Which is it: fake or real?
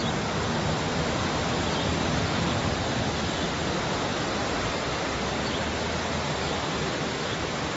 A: real